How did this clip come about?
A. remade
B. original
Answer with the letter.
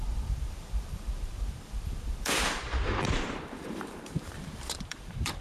A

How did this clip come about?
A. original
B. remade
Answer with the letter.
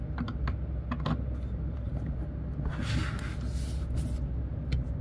A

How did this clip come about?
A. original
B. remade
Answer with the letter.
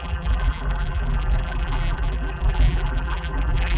B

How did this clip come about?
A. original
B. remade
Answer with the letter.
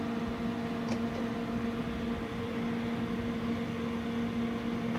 A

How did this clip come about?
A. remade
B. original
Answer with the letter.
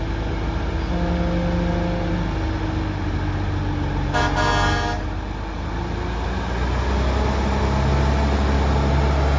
B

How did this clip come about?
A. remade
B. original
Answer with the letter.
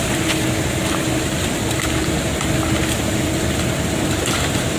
B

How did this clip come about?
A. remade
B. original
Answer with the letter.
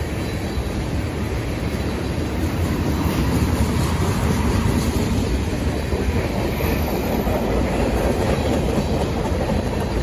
A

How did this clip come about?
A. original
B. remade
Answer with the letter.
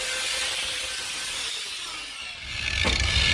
A